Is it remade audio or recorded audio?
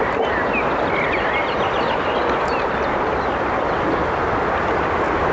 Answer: recorded